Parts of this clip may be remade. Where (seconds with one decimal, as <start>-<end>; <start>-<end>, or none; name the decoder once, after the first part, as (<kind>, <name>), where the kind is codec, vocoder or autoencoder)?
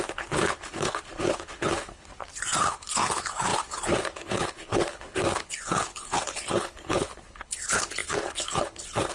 0.0-2.1 (codec, HILCodec); 2.6-9.1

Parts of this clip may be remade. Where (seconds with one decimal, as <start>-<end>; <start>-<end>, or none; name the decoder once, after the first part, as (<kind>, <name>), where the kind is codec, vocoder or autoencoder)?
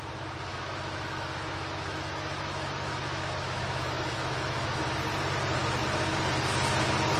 0.5-4.8 (autoencoder, DAC-VAE)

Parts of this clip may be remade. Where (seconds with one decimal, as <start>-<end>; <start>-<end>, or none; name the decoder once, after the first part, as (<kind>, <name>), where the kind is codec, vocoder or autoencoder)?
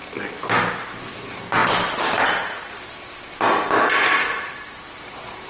0.0-0.7 (vocoder, BigVGAN v2); 1.6-3.5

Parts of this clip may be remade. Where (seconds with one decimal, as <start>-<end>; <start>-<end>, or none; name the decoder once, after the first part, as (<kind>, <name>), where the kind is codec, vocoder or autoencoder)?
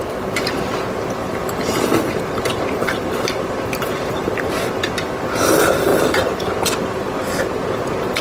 1.2-1.8 (vocoder, BigVGAN v2); 5.9-6.4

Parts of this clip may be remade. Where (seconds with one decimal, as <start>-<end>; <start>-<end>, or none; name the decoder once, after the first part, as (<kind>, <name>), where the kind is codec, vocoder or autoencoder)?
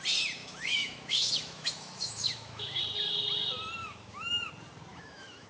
0.4-2.8 (autoencoder, DAC-VAE); 3.8-4.5; 4.9-5.5